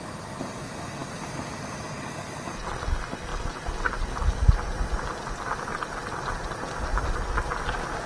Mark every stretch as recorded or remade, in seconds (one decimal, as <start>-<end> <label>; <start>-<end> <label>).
0.0-8.1 recorded